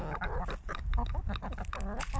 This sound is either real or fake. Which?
real